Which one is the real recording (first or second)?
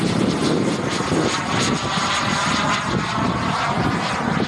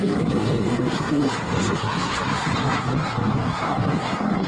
first